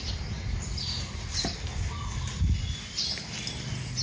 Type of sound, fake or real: real